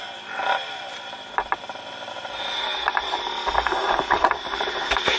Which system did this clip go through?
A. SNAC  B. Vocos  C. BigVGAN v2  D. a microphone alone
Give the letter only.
C